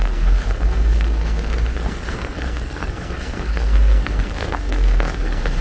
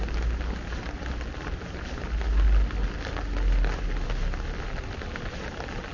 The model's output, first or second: first